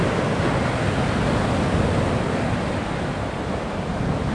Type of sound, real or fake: real